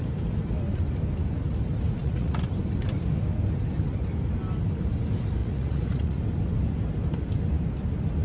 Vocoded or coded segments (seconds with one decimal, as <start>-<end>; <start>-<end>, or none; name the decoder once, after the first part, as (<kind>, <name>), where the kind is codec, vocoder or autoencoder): 2.0-2.5 (vocoder, Vocos); 5.4-6.2